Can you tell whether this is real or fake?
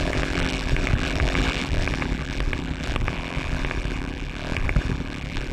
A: fake